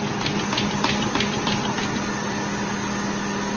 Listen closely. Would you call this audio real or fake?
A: real